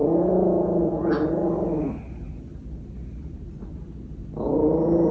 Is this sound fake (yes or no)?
no